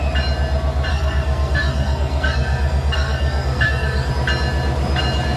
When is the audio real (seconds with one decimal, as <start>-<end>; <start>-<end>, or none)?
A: 0.0-0.9; 4.1-5.4